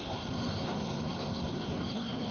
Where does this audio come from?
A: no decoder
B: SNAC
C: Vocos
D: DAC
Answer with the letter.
B